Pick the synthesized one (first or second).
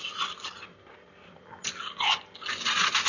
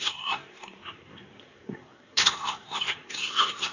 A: second